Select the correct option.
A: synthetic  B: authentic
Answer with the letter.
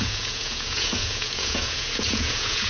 A